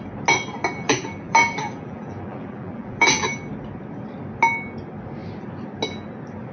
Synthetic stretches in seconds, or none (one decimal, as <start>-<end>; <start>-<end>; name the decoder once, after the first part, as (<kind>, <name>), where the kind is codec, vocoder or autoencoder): 0.7-3.5 (vocoder, BigVGAN v2)